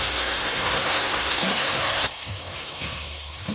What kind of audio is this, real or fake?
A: fake